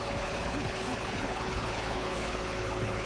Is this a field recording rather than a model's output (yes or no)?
no